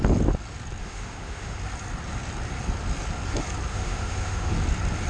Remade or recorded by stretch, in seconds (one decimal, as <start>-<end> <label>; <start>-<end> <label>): 0.0-0.8 recorded; 0.8-1.6 remade; 1.6-3.7 recorded; 3.7-4.5 remade; 4.5-5.1 recorded